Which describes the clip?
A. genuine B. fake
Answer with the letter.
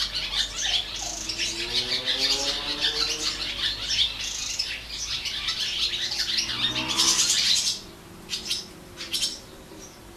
A